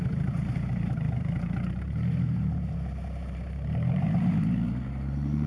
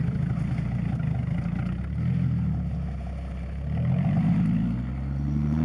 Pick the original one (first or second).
second